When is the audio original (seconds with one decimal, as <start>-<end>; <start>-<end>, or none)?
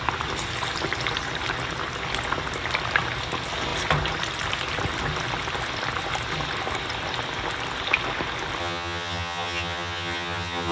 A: 0.0-8.6